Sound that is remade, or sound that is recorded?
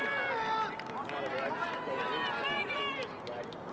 recorded